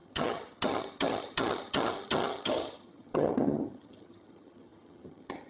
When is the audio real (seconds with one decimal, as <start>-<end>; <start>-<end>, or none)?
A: none